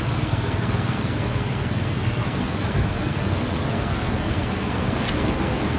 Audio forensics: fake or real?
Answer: fake